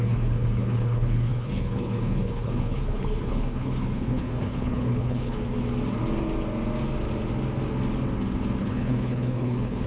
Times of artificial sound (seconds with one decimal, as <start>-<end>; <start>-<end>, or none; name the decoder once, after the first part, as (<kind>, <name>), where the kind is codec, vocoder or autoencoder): 0.0-5.4 (codec, HILCodec); 8.6-9.9